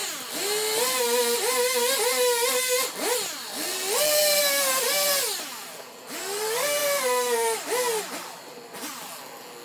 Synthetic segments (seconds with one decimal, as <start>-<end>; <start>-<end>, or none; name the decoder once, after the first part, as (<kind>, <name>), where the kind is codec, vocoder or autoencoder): none